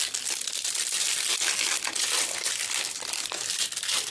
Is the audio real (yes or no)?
yes